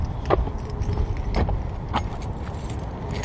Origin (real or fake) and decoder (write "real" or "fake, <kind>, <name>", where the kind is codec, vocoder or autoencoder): real